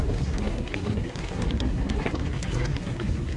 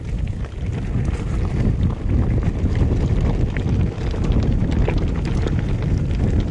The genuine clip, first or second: second